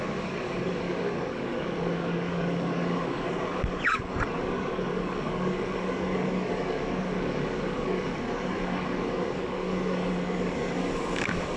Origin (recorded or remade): remade